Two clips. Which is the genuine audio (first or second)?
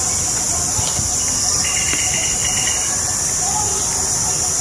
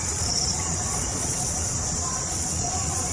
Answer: first